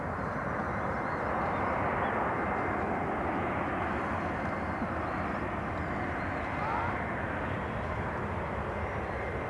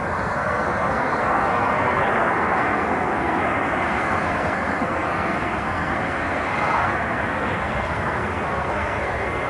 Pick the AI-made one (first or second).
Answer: second